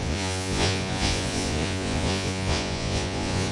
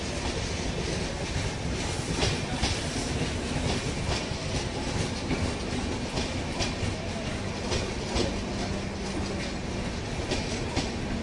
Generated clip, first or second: first